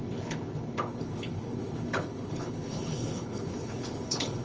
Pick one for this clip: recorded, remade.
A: remade